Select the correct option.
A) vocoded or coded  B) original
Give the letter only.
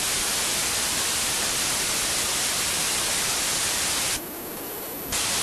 B